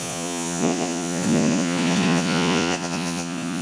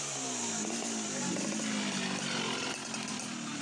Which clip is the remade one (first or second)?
first